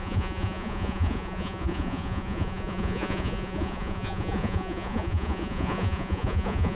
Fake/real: fake